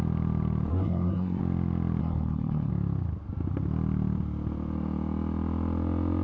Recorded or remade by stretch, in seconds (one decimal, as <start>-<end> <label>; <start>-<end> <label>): 0.0-0.7 recorded; 0.7-1.4 remade; 1.4-2.0 recorded; 2.0-2.7 remade; 2.7-6.2 recorded